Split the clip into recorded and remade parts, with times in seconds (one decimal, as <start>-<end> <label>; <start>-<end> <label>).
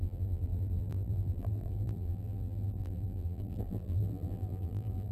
0.0-5.1 remade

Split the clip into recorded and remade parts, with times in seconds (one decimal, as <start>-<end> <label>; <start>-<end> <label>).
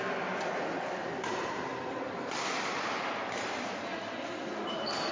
0.0-3.9 remade; 3.9-4.6 recorded; 4.6-5.1 remade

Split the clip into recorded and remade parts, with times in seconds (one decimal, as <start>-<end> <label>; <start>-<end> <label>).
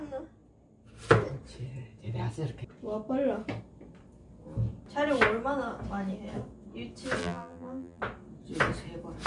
0.0-7.2 recorded; 7.2-8.0 remade; 8.0-9.3 recorded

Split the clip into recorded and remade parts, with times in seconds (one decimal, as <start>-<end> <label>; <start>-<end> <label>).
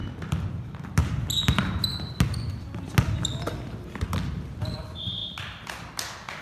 0.0-6.4 recorded